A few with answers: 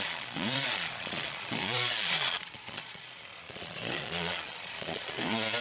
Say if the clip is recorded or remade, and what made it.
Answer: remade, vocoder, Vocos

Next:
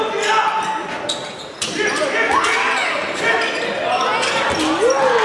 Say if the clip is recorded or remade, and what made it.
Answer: recorded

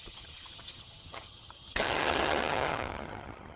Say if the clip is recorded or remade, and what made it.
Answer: remade, vocoder, HiFi-GAN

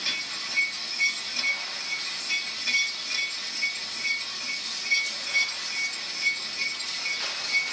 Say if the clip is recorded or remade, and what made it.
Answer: recorded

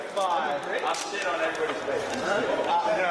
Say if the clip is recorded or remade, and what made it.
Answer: recorded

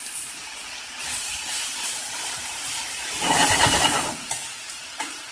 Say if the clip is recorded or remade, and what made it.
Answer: remade, vocoder, BigVGAN v2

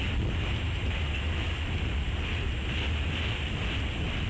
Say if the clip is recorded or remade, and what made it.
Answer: recorded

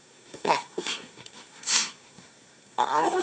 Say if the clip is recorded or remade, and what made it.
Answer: remade, codec, SNAC